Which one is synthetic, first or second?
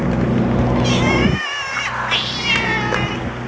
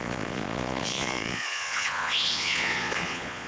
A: second